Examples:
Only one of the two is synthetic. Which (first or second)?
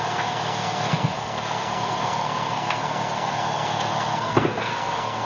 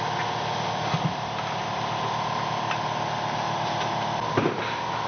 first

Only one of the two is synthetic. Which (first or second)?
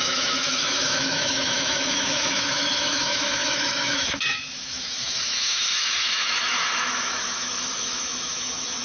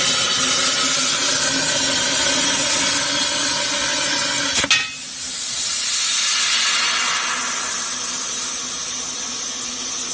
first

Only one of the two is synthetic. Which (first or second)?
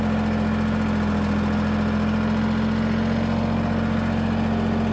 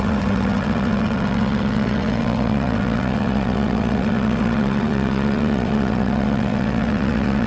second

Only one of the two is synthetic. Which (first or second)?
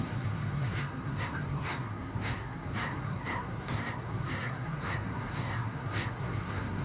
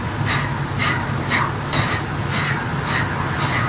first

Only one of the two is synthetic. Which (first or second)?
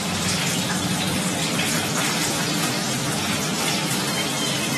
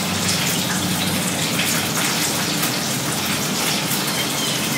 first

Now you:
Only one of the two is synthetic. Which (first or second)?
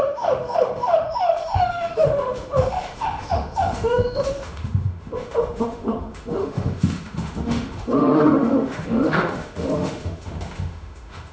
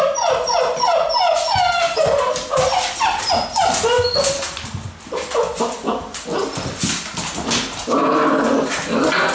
first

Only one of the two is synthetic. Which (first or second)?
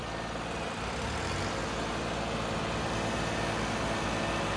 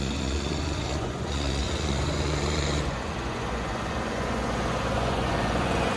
second